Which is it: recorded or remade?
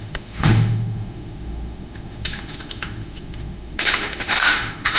remade